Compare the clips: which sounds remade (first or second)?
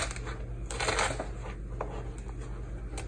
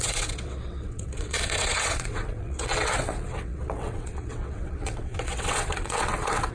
second